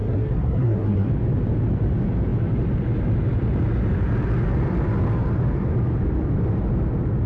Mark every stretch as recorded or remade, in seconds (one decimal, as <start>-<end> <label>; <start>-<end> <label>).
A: 0.0-1.1 remade; 1.1-7.3 recorded